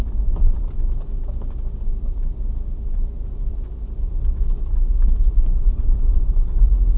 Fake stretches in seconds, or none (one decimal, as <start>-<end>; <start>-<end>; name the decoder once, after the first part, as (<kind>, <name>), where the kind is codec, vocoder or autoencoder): none